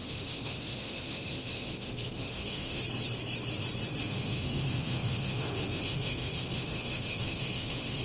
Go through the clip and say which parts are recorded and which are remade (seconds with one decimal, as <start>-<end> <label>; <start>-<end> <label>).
0.0-2.8 remade; 2.8-4.0 recorded; 4.0-8.0 remade